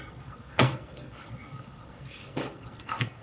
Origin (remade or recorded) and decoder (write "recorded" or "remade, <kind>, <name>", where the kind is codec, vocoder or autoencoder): remade, codec, SNAC